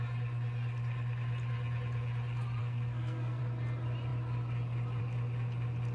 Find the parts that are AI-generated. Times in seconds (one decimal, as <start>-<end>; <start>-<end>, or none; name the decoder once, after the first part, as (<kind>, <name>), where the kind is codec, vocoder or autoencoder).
2.6-3.4 (codec, SNAC)